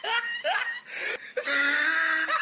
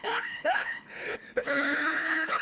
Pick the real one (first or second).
first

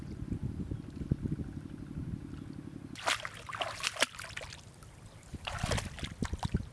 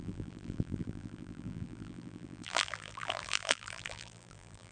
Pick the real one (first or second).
first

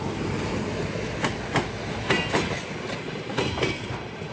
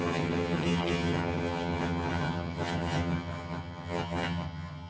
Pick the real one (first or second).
first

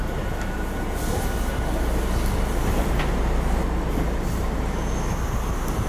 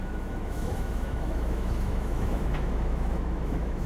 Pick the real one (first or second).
first